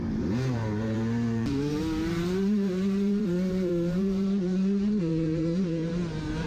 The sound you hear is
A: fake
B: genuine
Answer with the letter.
A